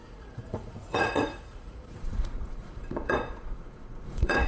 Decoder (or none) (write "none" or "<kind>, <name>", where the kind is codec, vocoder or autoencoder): vocoder, Vocos